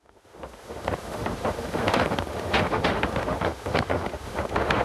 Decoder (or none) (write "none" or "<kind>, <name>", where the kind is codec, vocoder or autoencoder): autoencoder, DAC-VAE